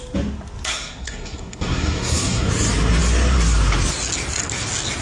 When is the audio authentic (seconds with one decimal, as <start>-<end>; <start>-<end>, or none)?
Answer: 0.0-0.7; 2.5-5.0